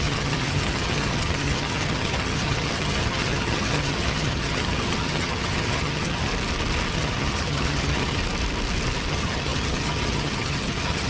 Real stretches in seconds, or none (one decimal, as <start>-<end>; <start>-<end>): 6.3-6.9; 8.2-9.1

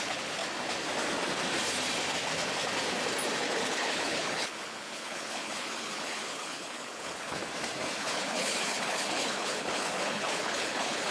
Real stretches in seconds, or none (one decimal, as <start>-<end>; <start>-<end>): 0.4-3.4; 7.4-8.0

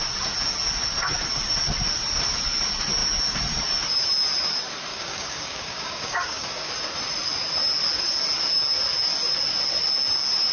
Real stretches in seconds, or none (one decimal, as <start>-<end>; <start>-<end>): 0.0-4.9; 6.7-10.5